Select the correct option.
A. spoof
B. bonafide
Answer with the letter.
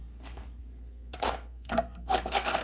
A